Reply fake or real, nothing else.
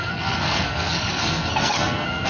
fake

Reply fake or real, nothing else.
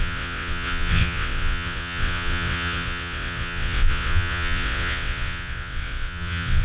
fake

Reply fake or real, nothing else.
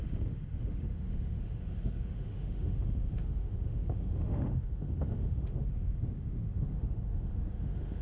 fake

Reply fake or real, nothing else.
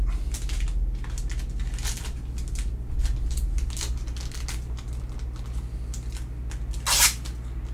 real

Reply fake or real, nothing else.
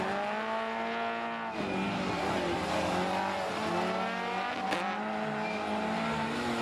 real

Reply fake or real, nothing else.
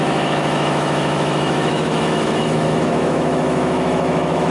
fake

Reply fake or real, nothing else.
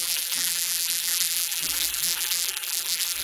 fake